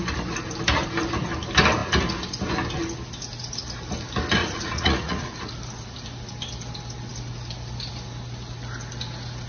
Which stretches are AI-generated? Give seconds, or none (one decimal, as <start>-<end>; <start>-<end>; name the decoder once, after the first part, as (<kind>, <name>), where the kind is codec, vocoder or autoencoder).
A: 4.4-5.5 (vocoder, Vocos)

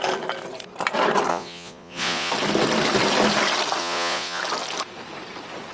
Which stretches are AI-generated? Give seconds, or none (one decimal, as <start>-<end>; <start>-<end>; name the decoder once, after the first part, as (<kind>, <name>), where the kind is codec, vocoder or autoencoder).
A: 1.3-2.3 (vocoder, Vocos); 3.8-4.4